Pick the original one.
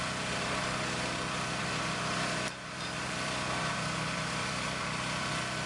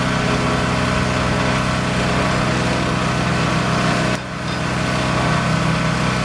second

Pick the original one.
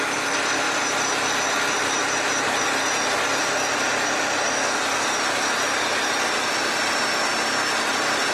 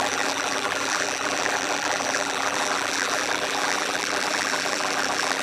first